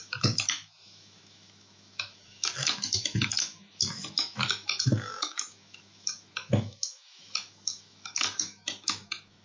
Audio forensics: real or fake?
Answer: fake